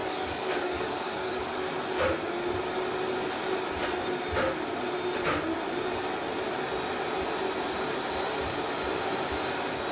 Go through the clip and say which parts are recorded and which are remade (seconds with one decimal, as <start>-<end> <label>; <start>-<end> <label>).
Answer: 0.0-1.4 remade; 1.4-9.9 recorded